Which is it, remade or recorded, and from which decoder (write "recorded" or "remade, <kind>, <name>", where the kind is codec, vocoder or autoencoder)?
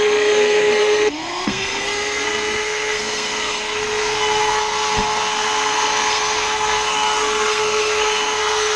remade, codec, SNAC